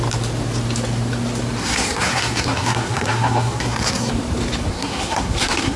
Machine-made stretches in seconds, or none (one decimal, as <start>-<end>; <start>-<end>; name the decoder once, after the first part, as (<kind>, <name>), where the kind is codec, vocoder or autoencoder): 1.6-4.1 (codec, SNAC); 4.7-5.8